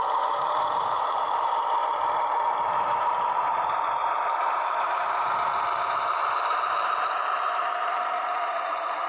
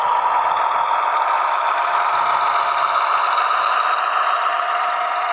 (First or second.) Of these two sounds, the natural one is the second